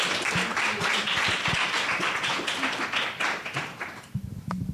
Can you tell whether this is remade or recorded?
recorded